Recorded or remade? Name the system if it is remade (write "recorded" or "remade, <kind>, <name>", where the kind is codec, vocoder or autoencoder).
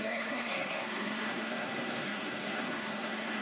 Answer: remade, codec, SNAC